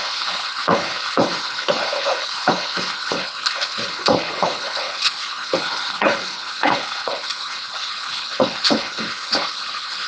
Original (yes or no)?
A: no